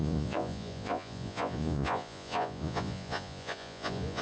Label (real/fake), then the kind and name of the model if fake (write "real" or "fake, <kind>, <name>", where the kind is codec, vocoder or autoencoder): fake, vocoder, Vocos